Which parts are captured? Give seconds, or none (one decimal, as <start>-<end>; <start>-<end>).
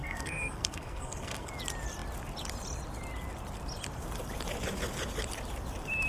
1.5-6.1